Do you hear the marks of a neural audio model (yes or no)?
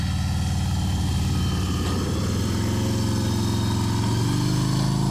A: no